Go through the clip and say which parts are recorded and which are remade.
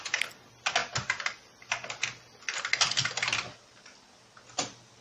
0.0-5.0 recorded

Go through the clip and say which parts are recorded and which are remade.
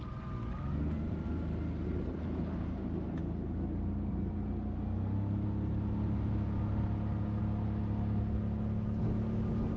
0.0-9.8 recorded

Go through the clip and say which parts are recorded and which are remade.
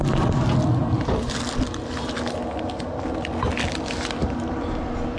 0.0-0.8 recorded; 0.8-1.4 remade; 1.4-5.2 recorded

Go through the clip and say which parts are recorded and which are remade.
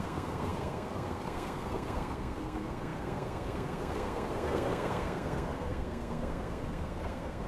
0.0-7.5 remade